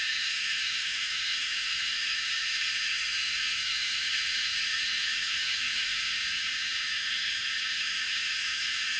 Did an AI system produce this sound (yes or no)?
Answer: yes